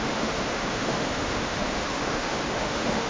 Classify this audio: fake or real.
fake